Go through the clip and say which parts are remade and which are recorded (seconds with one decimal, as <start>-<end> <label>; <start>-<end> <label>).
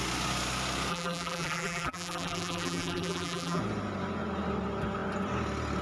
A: 0.0-0.9 recorded; 0.9-3.6 remade; 3.6-5.8 recorded